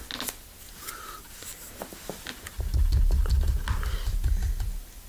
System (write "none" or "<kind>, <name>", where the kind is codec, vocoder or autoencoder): none